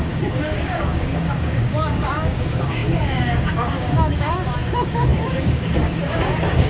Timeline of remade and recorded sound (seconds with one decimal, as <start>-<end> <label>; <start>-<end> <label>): 0.0-6.7 remade